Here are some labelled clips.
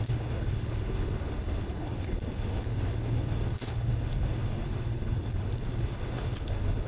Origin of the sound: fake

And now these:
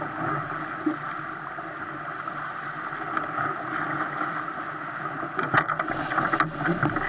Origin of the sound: real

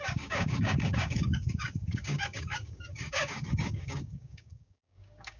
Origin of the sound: fake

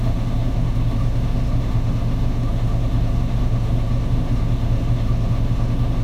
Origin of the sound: fake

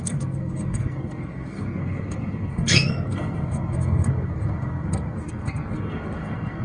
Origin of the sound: fake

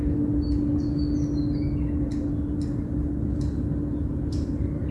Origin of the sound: real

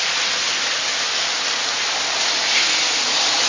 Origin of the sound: real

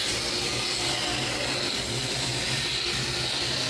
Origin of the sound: real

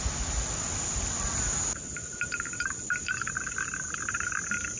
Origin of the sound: real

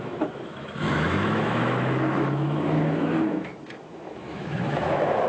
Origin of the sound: fake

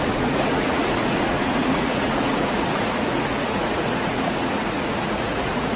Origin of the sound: fake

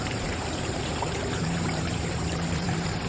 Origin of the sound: fake